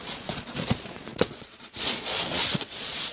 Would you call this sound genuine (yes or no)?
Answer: no